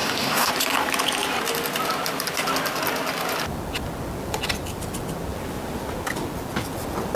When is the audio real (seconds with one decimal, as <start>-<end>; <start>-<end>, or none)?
0.5-7.2